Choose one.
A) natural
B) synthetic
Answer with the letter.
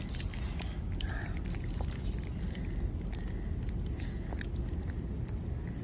A